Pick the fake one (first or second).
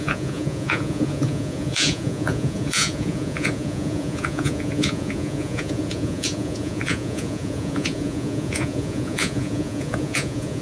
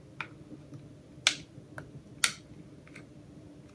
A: first